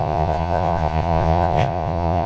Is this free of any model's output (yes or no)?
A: no